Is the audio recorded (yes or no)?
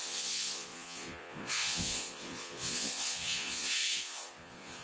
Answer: no